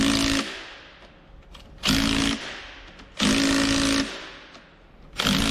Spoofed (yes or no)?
no